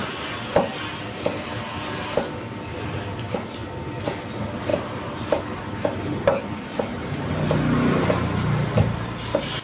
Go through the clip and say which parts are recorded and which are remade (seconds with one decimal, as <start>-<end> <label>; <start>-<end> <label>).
0.0-4.7 recorded; 4.7-5.4 remade; 5.4-6.3 recorded; 6.3-7.3 remade; 7.3-9.6 recorded